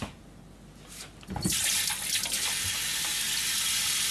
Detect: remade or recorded recorded